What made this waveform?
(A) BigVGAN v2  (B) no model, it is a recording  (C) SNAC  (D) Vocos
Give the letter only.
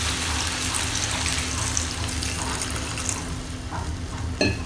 B